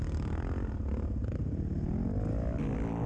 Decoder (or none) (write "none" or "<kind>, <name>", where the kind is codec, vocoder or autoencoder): none